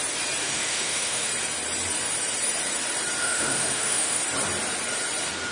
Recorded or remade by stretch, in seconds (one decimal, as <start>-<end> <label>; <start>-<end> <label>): 0.0-0.4 recorded; 0.4-1.3 remade; 1.3-3.2 recorded; 3.2-4.2 remade; 4.2-5.5 recorded